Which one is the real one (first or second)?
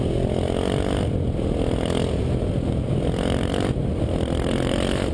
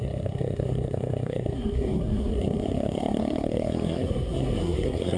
first